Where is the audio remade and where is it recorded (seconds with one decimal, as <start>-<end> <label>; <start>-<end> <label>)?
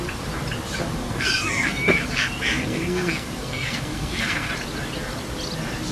0.0-1.0 recorded; 1.0-4.5 remade; 4.5-5.9 recorded